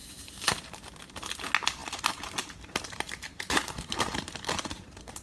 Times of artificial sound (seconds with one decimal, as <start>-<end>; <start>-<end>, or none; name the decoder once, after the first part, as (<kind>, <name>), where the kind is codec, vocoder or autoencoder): 0.0-5.2 (vocoder, BigVGAN v2)